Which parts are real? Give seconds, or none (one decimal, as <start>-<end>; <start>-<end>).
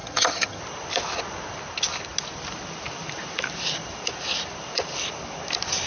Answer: 0.6-5.9